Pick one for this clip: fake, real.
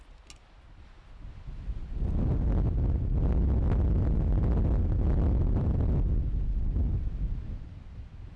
real